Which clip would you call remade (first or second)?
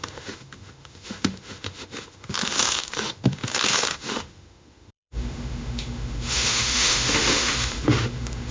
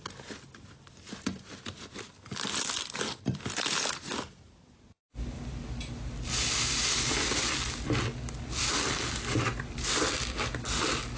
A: first